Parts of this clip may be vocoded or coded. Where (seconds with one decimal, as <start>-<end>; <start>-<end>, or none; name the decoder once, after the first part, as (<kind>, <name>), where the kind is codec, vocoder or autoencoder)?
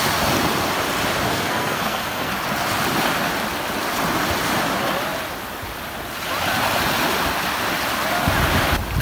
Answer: 1.3-2.3 (codec, SNAC)